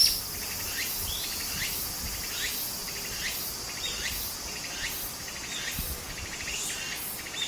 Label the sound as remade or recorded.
recorded